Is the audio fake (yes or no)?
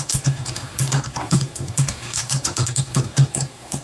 yes